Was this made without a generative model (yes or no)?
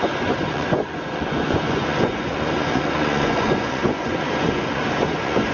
no